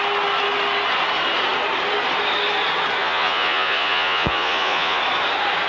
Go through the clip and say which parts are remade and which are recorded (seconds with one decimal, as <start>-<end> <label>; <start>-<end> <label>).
0.0-3.0 recorded; 3.0-5.0 remade; 5.0-5.7 recorded